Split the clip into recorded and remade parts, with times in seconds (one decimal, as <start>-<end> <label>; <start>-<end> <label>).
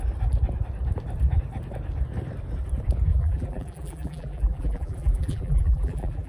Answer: 0.0-3.1 recorded; 3.1-6.3 remade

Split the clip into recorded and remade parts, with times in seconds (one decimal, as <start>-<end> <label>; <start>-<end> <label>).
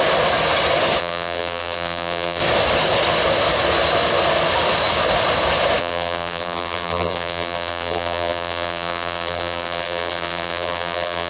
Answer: 0.0-1.0 recorded; 1.0-2.4 remade; 2.4-5.8 recorded; 5.8-11.3 remade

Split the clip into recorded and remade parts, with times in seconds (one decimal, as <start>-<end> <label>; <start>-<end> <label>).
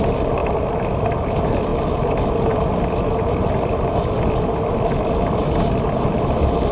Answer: 0.0-6.7 recorded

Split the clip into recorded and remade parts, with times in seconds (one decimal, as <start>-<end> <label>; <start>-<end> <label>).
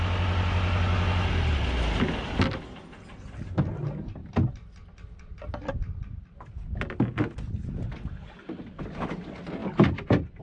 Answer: 0.0-10.4 recorded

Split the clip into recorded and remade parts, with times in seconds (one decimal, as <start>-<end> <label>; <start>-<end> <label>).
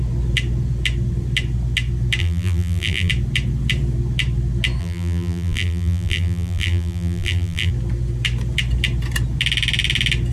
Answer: 0.0-2.2 recorded; 2.2-3.1 remade; 3.1-4.8 recorded; 4.8-7.7 remade; 7.7-10.3 recorded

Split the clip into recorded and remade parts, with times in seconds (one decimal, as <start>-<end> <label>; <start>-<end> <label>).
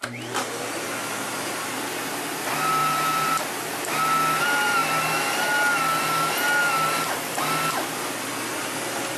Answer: 0.0-2.8 recorded; 2.8-3.4 remade; 3.4-9.2 recorded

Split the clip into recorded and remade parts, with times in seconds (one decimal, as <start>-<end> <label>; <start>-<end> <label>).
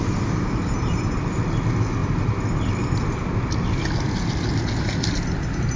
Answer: 0.0-5.8 recorded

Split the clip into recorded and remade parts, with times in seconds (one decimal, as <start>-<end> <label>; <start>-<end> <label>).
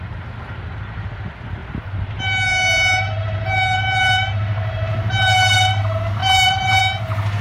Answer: 0.0-1.6 recorded; 1.6-2.2 remade; 2.2-6.2 recorded; 6.2-6.8 remade; 6.8-7.4 recorded